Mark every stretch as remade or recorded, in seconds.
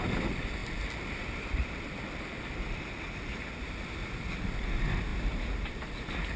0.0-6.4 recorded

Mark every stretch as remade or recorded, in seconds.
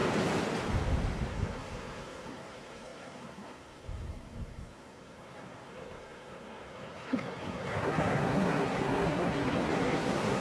0.0-1.3 recorded; 1.3-10.4 remade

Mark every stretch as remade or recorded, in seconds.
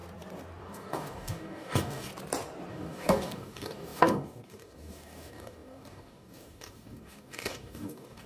0.0-0.6 recorded; 0.6-2.1 remade; 2.1-2.7 recorded; 2.7-8.3 remade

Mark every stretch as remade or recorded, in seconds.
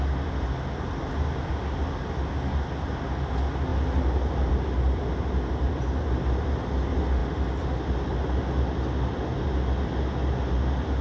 0.0-11.0 recorded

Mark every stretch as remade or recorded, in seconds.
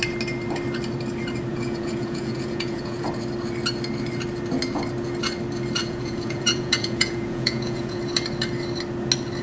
0.0-1.5 recorded; 1.5-3.1 remade; 3.1-5.8 recorded; 5.8-8.0 remade; 8.0-9.4 recorded